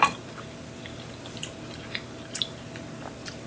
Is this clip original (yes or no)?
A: yes